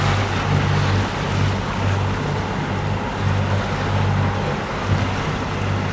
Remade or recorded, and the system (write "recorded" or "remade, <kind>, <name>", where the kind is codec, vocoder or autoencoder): recorded